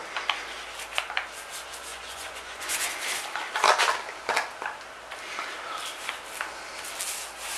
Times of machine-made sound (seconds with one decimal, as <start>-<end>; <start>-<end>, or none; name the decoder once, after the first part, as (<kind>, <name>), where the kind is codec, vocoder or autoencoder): 1.9-2.9 (vocoder, Vocos)